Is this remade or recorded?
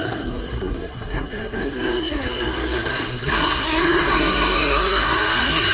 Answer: remade